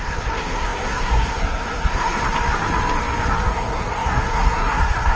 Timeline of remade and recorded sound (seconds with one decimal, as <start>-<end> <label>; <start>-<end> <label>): 0.0-2.2 remade; 2.2-3.5 recorded; 3.5-5.2 remade